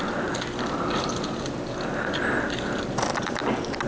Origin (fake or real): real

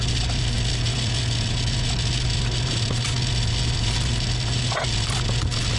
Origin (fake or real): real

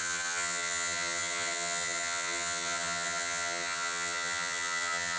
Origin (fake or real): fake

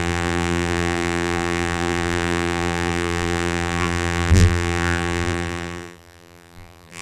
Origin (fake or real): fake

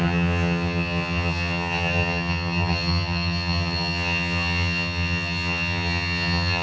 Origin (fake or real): fake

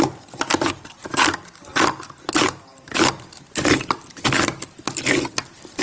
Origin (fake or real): real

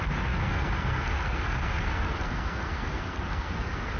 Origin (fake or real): fake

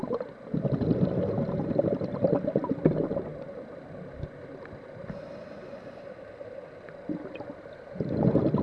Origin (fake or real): real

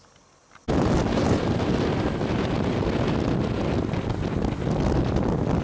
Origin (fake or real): real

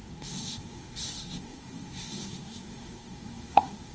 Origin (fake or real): fake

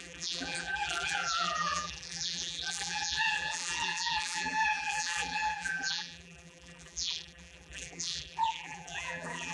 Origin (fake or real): fake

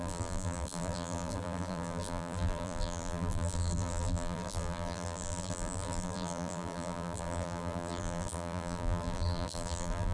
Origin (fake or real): fake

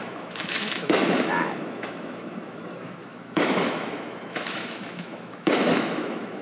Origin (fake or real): fake